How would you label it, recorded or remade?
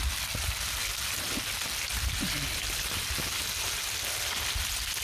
recorded